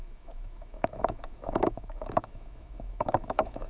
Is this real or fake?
fake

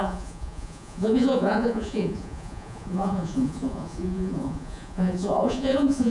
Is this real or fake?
fake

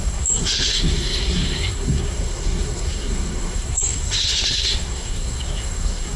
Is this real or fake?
fake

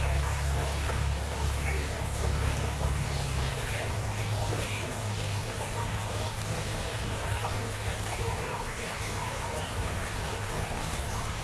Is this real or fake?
fake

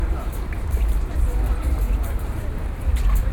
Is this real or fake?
fake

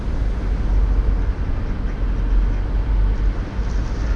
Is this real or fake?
real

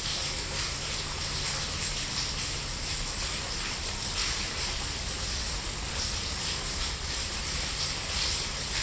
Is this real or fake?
real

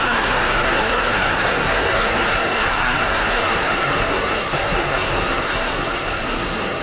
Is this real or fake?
fake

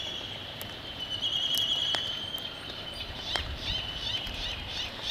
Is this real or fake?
fake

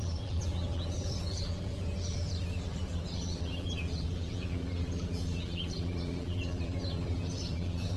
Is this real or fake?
fake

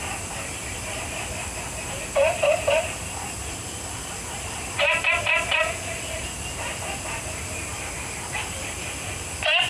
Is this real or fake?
fake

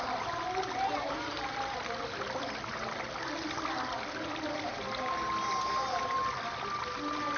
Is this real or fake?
real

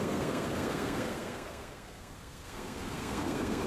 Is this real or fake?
fake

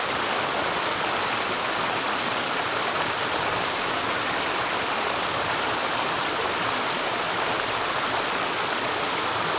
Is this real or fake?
real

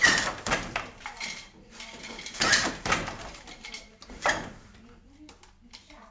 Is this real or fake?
fake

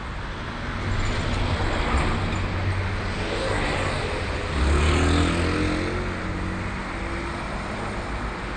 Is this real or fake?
real